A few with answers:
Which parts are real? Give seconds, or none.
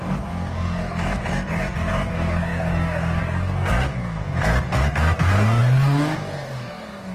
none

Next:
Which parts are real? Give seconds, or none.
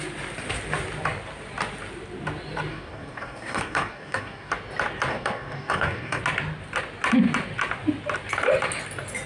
0.0-2.7; 4.5-5.1; 6.2-9.3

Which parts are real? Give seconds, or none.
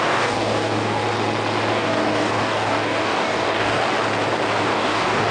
1.0-1.7; 3.8-4.6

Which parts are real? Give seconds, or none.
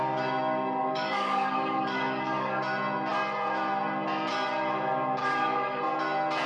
0.0-0.8; 2.6-5.2; 5.8-6.5